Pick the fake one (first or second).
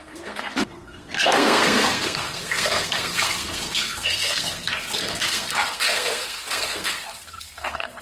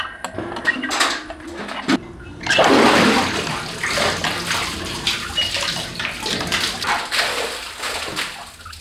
first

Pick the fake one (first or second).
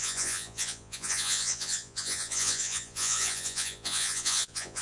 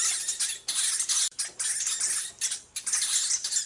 first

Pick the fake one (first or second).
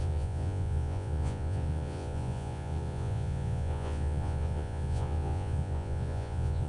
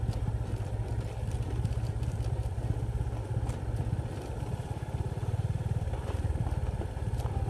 first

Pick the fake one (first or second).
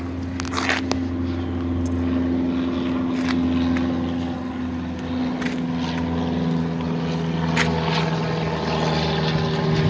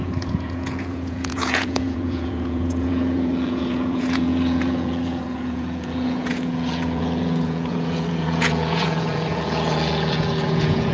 second